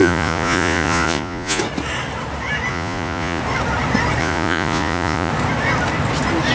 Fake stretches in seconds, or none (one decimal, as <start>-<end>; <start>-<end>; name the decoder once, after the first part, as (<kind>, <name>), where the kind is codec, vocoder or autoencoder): 0.0-1.6 (vocoder, Vocos); 2.7-3.4; 4.2-5.3